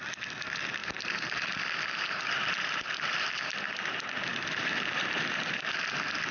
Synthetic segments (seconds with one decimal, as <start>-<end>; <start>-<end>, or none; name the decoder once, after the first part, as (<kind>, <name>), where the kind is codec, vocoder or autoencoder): 0.8-1.5 (vocoder, BigVGAN v2); 2.4-3.2; 4.3-5.7